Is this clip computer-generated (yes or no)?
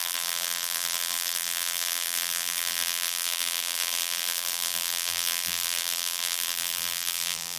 yes